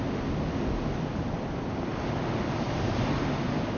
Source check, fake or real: real